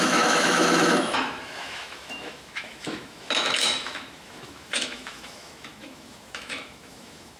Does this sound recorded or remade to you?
remade